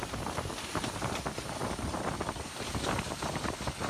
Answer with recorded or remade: recorded